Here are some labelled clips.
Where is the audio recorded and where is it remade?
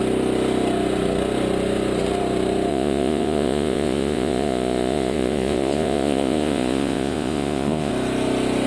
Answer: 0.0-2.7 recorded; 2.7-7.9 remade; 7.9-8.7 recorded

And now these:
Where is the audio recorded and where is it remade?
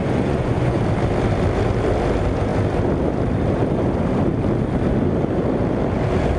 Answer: 0.0-0.8 remade; 0.8-6.4 recorded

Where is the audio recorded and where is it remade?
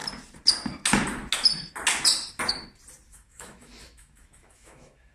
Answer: 0.0-3.1 recorded; 3.1-5.1 remade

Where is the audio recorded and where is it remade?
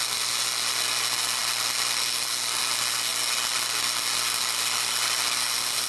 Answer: 0.0-5.9 recorded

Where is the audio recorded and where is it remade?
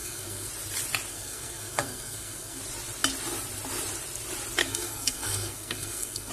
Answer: 0.0-0.5 remade; 0.5-1.1 recorded; 1.1-2.6 remade; 2.6-4.6 recorded; 4.6-6.3 remade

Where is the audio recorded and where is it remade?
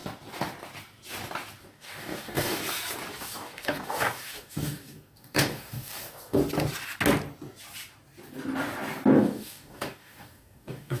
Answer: 0.0-1.6 recorded; 1.6-2.6 remade; 2.6-3.2 recorded; 3.2-6.4 remade; 6.4-9.2 recorded; 9.2-11.0 remade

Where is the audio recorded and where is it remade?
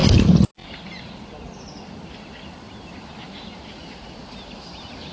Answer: 0.0-5.1 recorded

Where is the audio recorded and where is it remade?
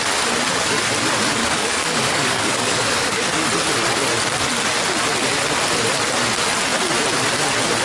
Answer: 0.0-1.4 recorded; 1.4-3.3 remade; 3.3-7.8 recorded